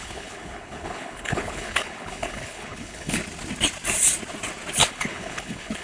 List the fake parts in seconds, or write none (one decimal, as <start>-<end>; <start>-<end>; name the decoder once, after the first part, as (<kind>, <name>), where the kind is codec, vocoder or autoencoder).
0.0-3.2 (codec, HILCodec); 4.9-5.8